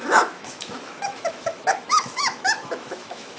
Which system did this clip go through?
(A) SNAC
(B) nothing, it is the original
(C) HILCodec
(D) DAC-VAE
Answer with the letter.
D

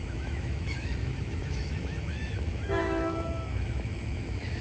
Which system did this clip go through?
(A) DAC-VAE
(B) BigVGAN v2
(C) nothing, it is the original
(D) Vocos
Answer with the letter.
A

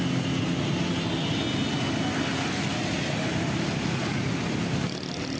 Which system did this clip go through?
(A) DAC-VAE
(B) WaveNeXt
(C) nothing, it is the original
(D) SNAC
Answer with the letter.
C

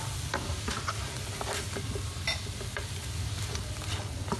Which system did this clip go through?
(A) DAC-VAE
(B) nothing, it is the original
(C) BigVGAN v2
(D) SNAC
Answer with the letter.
B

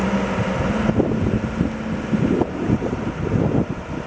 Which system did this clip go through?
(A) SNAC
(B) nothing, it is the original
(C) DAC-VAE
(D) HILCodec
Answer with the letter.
B